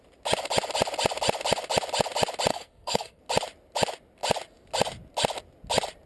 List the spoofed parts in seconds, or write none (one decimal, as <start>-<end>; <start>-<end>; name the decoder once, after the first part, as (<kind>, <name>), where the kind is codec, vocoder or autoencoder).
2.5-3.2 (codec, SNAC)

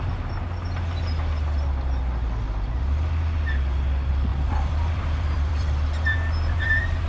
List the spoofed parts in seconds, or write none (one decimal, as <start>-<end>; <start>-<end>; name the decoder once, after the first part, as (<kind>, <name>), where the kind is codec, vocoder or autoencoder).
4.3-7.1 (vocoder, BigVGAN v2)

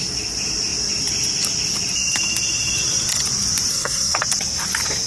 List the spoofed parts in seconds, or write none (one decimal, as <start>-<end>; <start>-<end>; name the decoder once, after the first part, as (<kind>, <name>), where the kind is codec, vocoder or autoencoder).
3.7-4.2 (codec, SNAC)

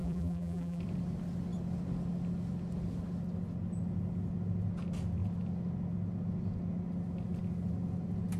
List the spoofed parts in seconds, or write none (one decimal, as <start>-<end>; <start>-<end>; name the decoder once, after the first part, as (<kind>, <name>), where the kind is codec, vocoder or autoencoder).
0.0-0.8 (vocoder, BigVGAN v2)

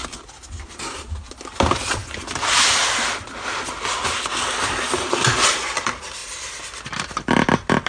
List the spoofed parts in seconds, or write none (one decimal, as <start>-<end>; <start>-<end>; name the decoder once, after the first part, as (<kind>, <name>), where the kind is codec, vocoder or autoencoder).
none

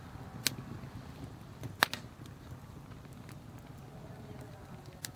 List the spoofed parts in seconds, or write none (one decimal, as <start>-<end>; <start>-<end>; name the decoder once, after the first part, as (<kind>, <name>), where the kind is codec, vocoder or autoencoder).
none

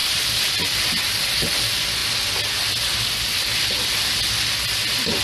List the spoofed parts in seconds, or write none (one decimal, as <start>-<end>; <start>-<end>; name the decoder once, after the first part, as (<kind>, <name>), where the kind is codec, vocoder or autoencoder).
0.0-1.2 (vocoder, BigVGAN v2)

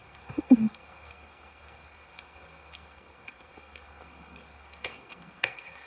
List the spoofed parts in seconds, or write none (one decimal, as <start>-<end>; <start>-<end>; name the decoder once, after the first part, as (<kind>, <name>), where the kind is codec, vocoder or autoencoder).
0.0-5.9 (codec, SNAC)